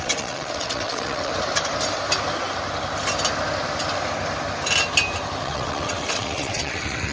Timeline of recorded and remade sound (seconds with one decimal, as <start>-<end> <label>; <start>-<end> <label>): 0.0-1.3 remade; 1.3-5.4 recorded; 5.4-7.1 remade